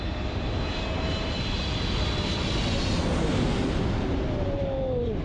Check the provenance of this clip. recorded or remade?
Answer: recorded